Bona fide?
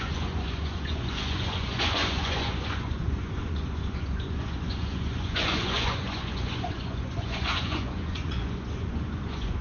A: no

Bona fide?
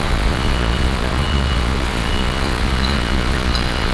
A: no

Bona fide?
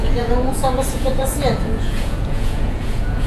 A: no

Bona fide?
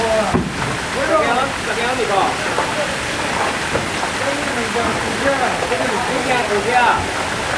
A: yes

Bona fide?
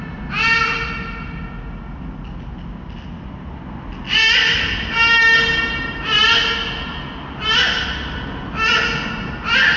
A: yes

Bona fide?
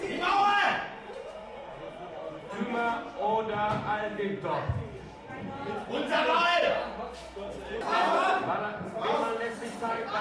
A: yes